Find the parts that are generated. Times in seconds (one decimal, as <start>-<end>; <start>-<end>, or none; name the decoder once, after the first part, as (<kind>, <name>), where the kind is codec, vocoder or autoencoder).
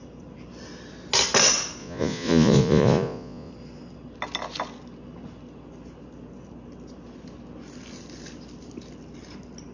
1.8-3.5 (vocoder, Vocos)